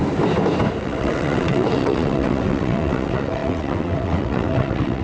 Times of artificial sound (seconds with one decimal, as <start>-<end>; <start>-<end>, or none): 0.8-5.0